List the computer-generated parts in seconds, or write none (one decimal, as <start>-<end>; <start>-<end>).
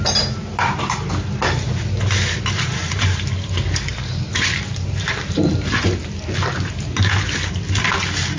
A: 2.8-3.5; 3.9-6.0